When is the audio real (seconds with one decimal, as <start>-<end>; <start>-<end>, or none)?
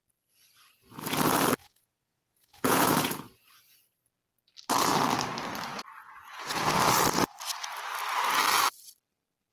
0.0-1.6; 3.5-5.7; 6.7-9.5